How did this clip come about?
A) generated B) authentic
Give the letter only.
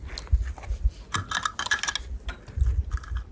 B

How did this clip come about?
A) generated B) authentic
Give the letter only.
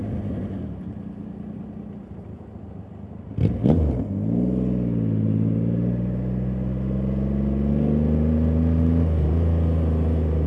B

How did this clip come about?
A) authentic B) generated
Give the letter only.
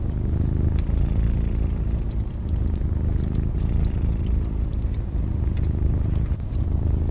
A